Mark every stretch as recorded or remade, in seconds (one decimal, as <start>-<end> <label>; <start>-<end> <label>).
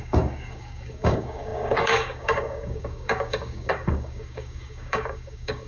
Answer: 0.0-5.7 remade